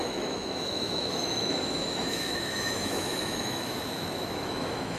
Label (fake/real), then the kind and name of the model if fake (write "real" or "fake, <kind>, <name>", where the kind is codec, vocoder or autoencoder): fake, autoencoder, DAC-VAE